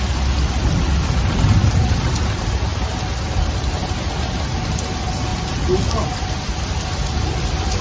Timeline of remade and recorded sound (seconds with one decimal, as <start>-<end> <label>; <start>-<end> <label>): 0.0-7.8 recorded